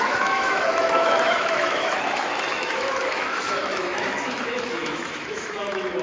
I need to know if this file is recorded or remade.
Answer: remade